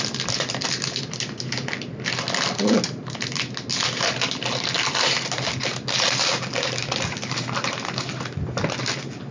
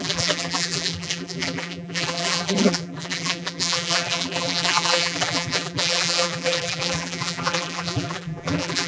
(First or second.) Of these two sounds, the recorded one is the first